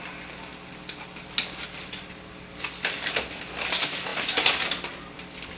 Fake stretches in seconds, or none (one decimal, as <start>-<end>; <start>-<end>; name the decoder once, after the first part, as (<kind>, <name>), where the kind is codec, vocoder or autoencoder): none